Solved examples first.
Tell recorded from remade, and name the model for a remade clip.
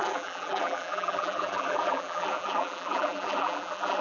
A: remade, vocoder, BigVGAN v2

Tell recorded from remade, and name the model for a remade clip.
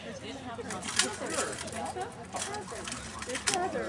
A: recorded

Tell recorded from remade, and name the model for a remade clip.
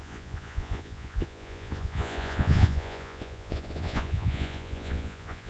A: remade, vocoder, Vocos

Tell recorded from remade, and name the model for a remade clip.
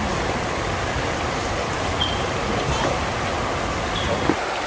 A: recorded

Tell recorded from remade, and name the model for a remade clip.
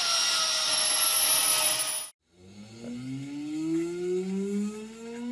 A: recorded